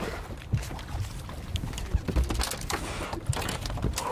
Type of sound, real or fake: real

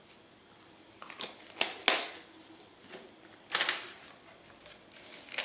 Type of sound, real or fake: real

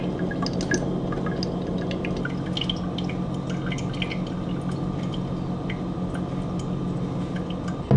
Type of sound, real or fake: real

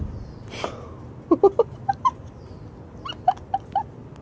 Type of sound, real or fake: real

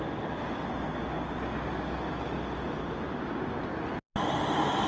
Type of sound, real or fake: real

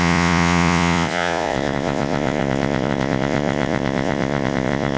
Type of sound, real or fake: fake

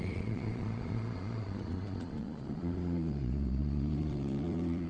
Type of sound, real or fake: fake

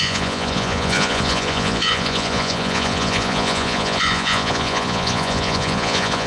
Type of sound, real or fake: fake